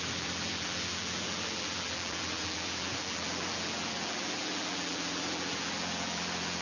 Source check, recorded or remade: remade